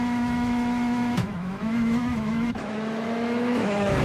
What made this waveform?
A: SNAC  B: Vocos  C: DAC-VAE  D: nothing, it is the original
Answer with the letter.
C